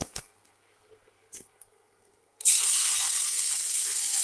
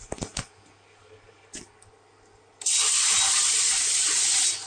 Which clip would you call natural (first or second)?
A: second